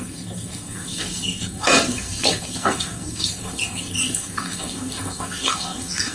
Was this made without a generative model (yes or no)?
no